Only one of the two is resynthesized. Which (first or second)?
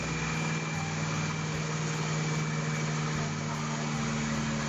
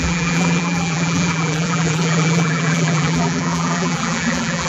second